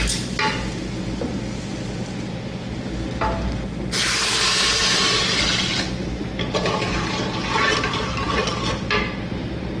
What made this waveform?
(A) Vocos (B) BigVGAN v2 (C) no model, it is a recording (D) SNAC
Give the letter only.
C